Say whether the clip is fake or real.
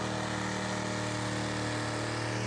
real